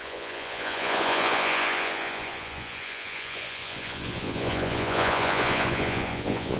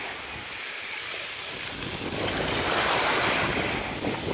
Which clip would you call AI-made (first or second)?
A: first